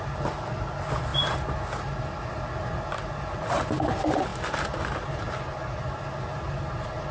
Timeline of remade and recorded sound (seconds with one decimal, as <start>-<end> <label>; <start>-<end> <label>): 0.0-7.1 recorded

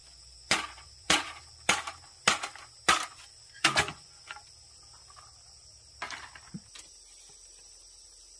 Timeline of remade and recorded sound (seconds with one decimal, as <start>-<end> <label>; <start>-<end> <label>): 0.0-1.3 remade; 1.3-3.6 recorded; 3.6-4.5 remade; 4.5-8.4 recorded

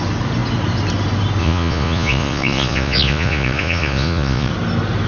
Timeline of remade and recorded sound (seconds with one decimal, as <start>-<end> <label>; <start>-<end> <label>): 0.0-1.4 recorded; 1.4-4.5 remade; 4.5-5.1 recorded

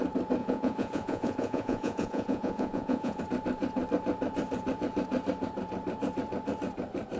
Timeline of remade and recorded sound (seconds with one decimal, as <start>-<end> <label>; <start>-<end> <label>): 0.0-0.4 recorded; 0.4-3.2 remade; 3.2-7.2 recorded